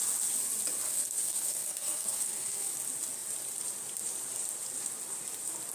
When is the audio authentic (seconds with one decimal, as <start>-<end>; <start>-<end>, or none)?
0.0-0.9; 2.7-5.7